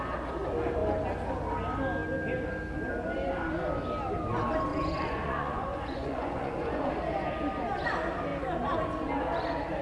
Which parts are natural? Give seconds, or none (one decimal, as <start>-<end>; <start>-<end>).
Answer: 0.0-4.7; 6.9-9.8